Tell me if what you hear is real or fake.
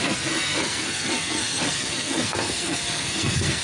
fake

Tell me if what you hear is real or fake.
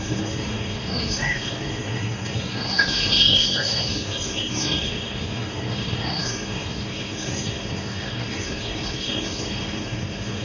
fake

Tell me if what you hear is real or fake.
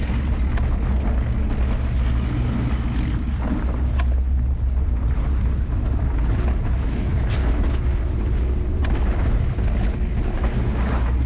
real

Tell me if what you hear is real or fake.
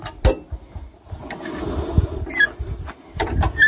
real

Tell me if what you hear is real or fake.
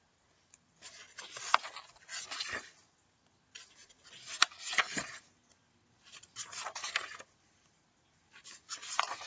real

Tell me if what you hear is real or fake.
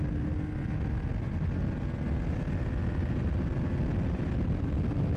real